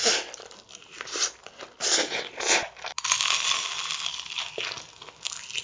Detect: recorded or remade recorded